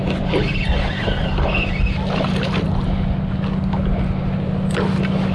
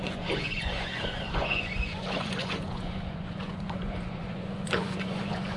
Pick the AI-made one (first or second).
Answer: second